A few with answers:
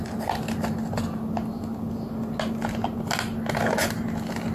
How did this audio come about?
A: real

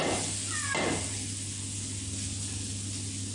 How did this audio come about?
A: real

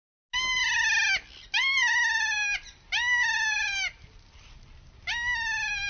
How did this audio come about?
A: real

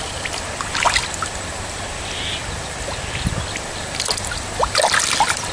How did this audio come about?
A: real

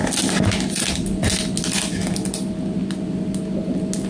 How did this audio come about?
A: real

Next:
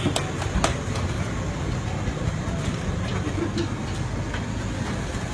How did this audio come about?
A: real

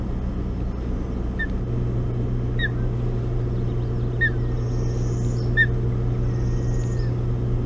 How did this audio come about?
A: real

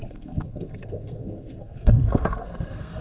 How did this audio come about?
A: fake